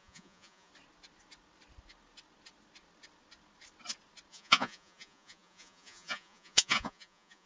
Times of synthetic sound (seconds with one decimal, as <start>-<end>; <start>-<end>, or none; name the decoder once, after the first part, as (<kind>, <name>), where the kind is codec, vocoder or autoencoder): 0.0-0.7 (vocoder, Vocos); 4.3-7.5